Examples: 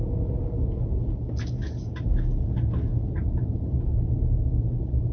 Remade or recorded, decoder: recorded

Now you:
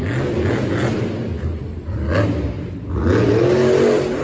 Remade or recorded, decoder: recorded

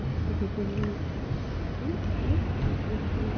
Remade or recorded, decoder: recorded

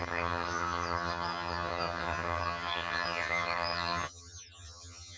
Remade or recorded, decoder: remade, vocoder, HiFi-GAN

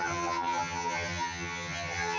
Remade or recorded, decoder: remade, vocoder, HiFi-GAN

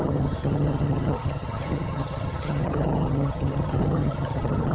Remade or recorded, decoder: remade, vocoder, HiFi-GAN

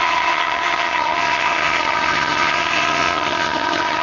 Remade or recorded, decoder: remade, vocoder, HiFi-GAN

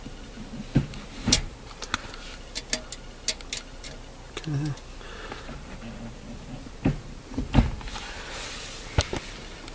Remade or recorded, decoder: recorded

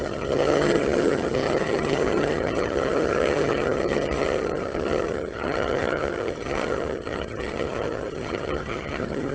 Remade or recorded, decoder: remade, vocoder, HiFi-GAN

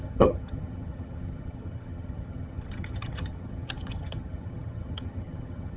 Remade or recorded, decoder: remade, vocoder, HiFi-GAN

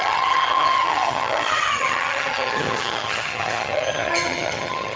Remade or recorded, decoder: remade, vocoder, HiFi-GAN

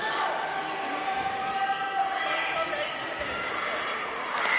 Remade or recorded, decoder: recorded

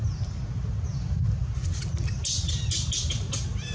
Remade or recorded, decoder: recorded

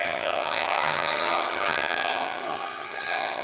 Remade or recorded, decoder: remade, vocoder, HiFi-GAN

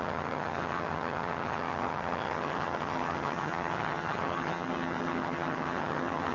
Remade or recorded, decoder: remade, vocoder, HiFi-GAN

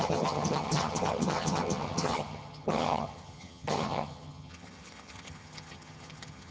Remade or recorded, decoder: remade, vocoder, HiFi-GAN